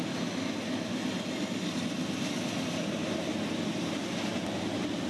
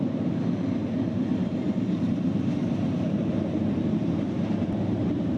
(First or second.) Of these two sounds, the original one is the first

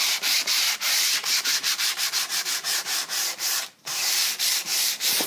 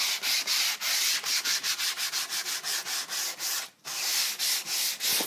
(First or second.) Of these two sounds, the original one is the second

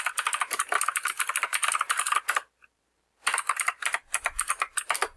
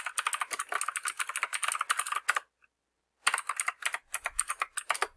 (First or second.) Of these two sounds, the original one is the second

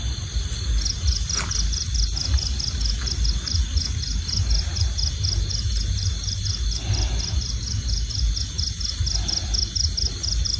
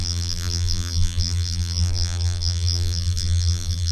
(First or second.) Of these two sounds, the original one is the first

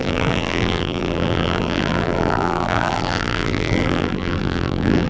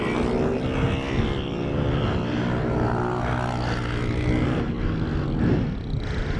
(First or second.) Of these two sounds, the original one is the second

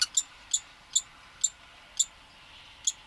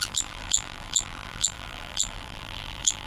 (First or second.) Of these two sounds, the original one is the first